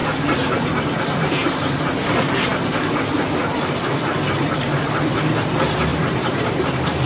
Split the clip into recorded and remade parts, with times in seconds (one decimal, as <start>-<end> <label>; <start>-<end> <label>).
0.0-5.9 recorded; 5.9-6.5 remade; 6.5-7.1 recorded